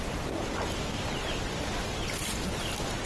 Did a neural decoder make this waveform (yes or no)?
no